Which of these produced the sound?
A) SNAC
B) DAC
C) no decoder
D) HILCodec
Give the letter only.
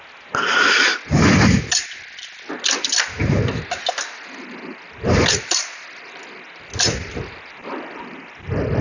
C